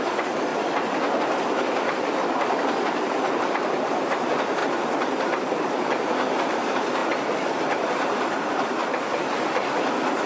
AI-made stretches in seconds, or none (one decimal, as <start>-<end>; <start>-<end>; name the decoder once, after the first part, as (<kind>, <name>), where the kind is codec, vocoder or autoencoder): 0.0-0.5 (vocoder, BigVGAN v2); 2.0-8.8